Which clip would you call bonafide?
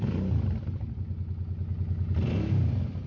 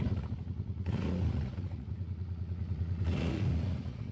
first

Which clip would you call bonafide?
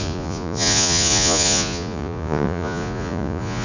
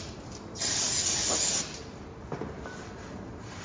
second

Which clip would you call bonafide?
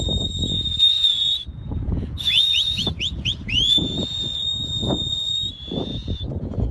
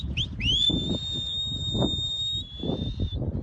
second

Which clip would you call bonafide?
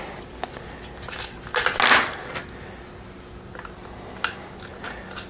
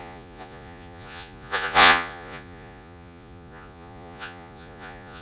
first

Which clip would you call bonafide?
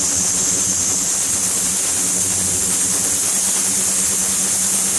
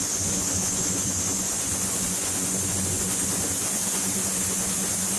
first